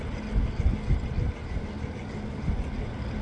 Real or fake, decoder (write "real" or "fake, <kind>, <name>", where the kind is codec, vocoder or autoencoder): real